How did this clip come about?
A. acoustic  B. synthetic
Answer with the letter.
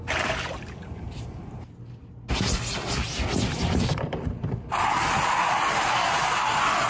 A